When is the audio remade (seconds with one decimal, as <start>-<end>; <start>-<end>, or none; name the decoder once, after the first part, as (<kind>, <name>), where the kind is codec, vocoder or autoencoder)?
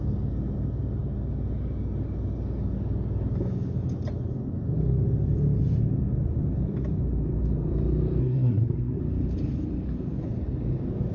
8.2-9.0 (codec, SNAC)